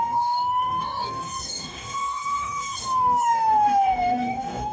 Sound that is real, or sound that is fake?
fake